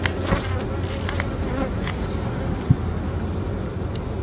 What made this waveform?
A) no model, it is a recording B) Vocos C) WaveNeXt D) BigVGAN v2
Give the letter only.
A